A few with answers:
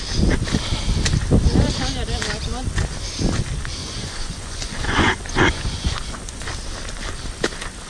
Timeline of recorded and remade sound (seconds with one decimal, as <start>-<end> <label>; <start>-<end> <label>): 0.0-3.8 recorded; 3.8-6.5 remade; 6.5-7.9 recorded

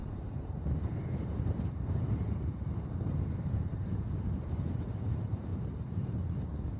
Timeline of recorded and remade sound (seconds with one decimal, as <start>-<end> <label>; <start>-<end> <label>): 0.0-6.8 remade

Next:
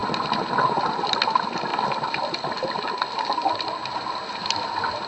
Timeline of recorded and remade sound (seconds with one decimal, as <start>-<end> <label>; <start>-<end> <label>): 0.0-0.8 recorded; 0.8-1.7 remade; 1.7-5.1 recorded

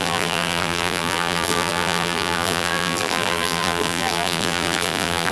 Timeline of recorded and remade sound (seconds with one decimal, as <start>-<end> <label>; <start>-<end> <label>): 0.0-5.3 remade

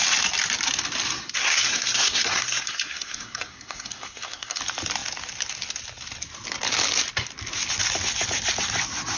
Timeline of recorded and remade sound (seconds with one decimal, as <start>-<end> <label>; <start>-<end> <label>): 0.0-1.4 recorded; 1.4-4.6 remade; 4.6-9.2 recorded

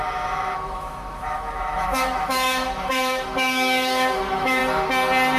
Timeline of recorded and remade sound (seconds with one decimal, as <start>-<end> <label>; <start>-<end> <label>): 0.0-4.6 remade; 4.6-5.4 recorded

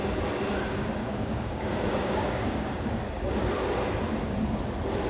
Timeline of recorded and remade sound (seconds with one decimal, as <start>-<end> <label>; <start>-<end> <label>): 0.0-1.0 recorded; 1.0-3.4 remade; 3.4-5.1 recorded

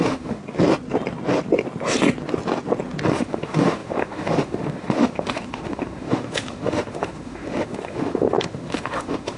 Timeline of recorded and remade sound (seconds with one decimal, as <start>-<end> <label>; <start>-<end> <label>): 0.0-0.4 remade; 0.4-3.1 recorded; 3.1-9.4 remade